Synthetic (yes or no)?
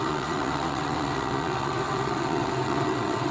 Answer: yes